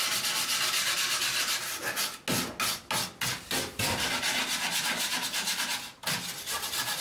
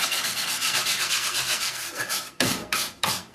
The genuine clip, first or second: first